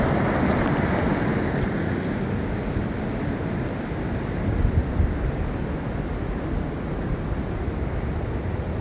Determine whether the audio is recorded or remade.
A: recorded